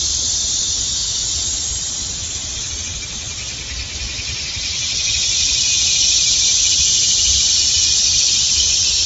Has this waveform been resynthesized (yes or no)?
no